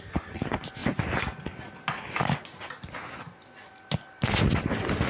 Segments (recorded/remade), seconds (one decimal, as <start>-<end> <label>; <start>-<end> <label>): 0.0-5.1 recorded